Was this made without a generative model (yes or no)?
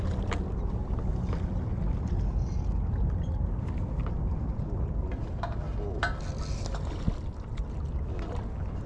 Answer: yes